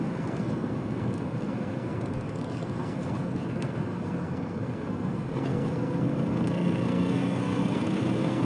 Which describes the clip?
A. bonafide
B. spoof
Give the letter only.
B